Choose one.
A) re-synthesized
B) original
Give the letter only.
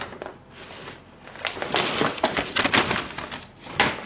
B